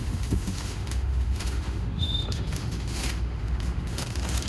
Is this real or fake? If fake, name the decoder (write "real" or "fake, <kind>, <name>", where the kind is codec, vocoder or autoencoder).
fake, autoencoder, DAC-VAE